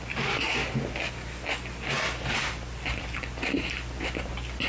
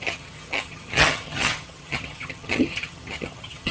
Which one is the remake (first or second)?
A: second